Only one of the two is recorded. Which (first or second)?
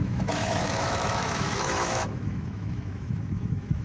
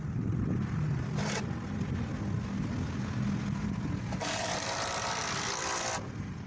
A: second